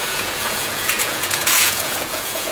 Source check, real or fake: fake